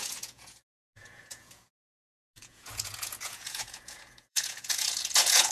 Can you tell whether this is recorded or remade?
remade